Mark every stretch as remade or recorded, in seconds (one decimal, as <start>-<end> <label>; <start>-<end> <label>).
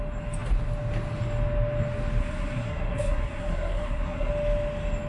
0.0-2.2 recorded; 2.2-4.3 remade; 4.3-5.1 recorded